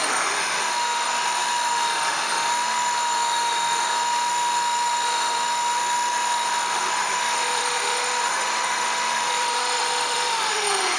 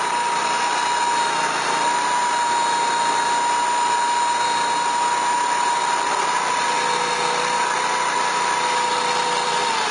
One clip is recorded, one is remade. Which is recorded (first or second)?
second